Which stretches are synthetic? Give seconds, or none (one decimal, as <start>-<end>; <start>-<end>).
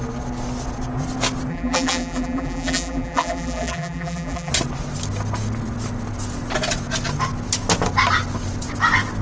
1.5-4.5